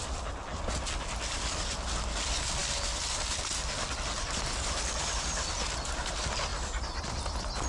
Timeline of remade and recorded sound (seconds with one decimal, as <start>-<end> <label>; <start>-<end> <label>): 0.0-7.7 recorded